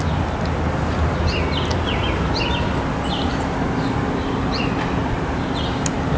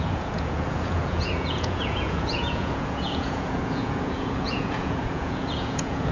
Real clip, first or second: first